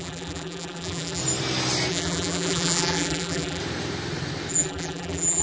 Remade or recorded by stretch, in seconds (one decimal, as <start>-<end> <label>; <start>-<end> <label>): 0.0-1.2 remade; 1.2-1.9 recorded; 1.9-3.6 remade; 3.6-4.5 recorded; 4.5-5.4 remade